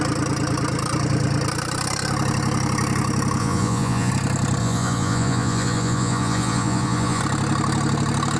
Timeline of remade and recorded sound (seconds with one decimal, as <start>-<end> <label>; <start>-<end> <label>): 0.0-3.4 recorded; 3.4-4.1 remade; 4.1-4.6 recorded; 4.6-7.2 remade; 7.2-8.4 recorded